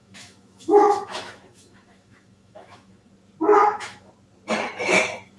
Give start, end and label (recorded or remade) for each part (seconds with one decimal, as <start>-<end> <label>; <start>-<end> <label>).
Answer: 0.0-3.1 remade; 3.1-3.5 recorded; 3.5-4.1 remade; 4.1-5.4 recorded